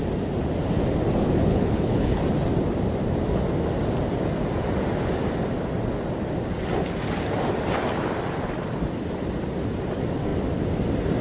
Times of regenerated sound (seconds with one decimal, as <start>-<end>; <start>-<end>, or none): 1.5-2.2